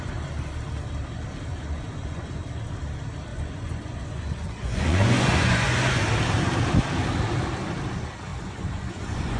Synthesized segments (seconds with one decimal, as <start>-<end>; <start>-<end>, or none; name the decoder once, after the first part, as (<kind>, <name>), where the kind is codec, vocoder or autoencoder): 1.5-2.5 (vocoder, Vocos); 3.3-6.0; 8.3-9.4